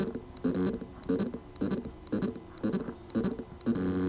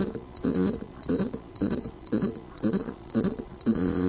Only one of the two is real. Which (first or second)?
first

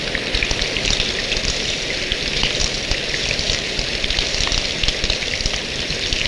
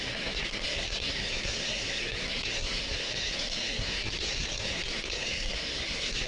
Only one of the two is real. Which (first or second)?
first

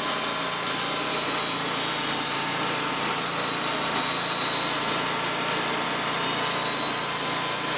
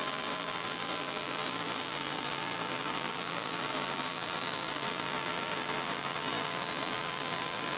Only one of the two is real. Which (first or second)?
first